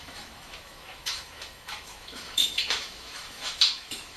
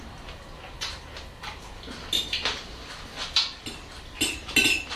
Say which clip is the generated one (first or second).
first